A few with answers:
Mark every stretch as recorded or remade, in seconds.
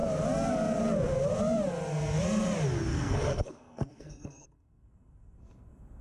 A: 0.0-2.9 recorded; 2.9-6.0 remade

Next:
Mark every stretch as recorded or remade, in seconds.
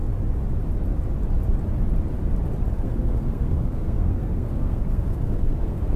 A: 0.0-2.7 recorded; 2.7-6.0 remade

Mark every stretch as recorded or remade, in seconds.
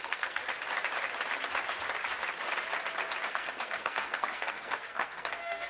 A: 0.0-0.4 remade; 0.4-3.3 recorded; 3.3-5.7 remade